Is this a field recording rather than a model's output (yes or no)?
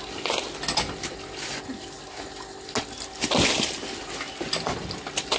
yes